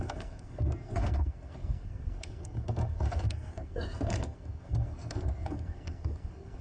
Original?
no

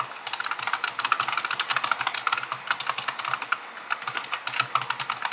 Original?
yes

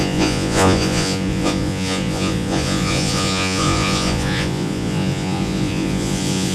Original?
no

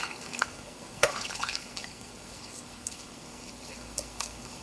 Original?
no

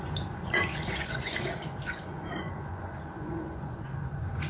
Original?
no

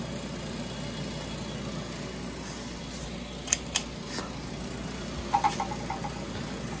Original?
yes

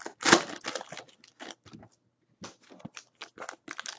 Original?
yes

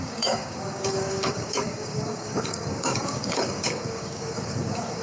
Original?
no